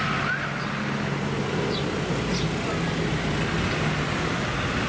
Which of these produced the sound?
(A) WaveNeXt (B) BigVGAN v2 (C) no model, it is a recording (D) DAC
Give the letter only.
C